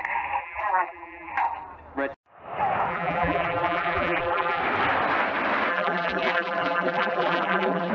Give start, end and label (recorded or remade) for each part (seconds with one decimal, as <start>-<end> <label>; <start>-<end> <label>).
0.0-0.4 recorded; 0.4-1.3 remade; 1.3-2.9 recorded; 2.9-4.6 remade; 4.6-5.7 recorded; 5.7-7.9 remade